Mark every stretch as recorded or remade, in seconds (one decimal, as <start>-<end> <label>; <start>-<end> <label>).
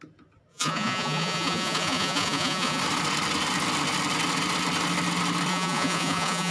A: 0.0-0.5 recorded; 0.5-2.8 remade; 2.8-5.5 recorded; 5.5-6.5 remade